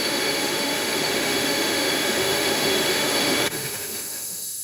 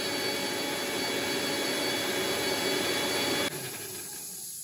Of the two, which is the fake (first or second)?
first